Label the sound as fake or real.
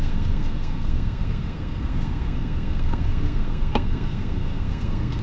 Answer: fake